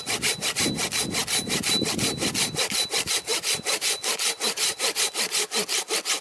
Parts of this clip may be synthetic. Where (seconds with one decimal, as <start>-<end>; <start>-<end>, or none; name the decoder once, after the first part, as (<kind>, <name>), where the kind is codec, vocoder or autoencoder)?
3.3-5.0 (vocoder, BigVGAN v2)